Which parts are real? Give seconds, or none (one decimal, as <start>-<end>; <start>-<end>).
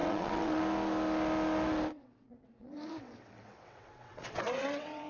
0.6-1.9